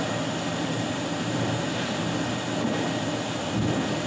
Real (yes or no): yes